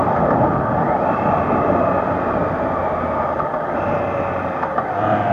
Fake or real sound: real